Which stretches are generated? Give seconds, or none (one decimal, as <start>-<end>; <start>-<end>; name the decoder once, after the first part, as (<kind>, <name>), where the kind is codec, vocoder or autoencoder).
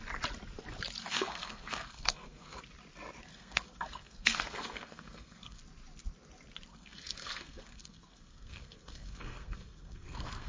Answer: 1.0-2.6 (codec, SNAC); 3.3-5.6; 6.7-10.5